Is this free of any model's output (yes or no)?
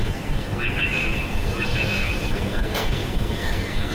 no